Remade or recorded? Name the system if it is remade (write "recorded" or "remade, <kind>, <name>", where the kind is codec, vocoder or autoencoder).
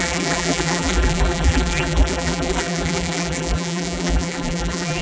remade, vocoder, BigVGAN v2